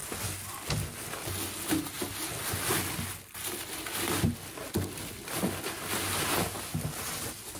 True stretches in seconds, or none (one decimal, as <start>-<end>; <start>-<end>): 0.0-7.6